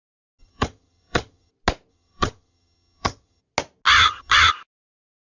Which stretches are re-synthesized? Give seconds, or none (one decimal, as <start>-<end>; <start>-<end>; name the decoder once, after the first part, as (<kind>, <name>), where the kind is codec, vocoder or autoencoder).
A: 0.4-1.5 (vocoder, HiFi-GAN); 1.9-3.4; 3.9-4.5